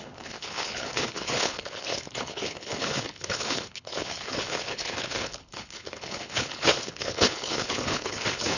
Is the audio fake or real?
fake